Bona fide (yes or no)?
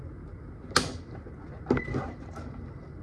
yes